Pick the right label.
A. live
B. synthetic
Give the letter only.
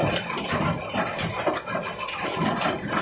A